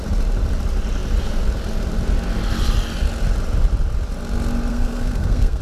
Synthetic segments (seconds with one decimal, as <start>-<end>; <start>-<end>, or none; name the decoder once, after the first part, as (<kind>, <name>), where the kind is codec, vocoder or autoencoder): 4.7-5.6 (codec, SNAC)